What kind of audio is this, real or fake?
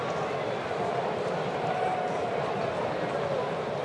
real